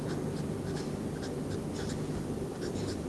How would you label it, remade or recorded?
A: recorded